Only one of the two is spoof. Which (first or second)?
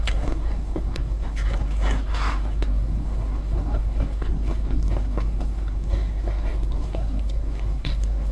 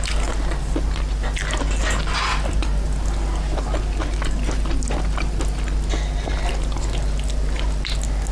first